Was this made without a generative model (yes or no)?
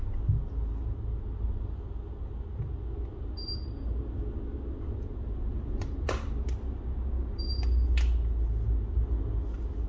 yes